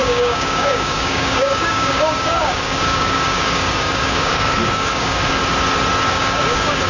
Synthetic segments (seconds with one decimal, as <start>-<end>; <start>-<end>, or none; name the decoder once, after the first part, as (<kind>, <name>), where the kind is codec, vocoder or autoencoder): 0.0-5.4 (codec, DAC); 6.1-6.9